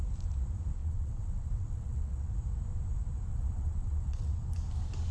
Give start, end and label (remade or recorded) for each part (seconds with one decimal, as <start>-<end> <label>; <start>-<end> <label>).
0.0-0.8 recorded; 0.8-2.3 remade; 2.3-3.3 recorded; 3.3-4.3 remade; 4.3-5.1 recorded